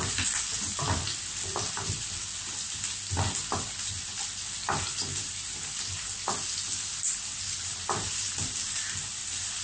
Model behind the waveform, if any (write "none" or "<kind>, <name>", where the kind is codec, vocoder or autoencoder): none